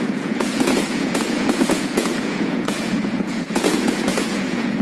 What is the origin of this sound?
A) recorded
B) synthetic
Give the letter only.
B